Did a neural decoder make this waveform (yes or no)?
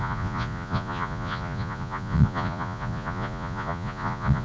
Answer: yes